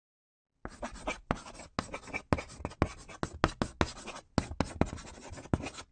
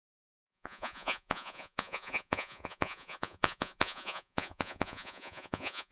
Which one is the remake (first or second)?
second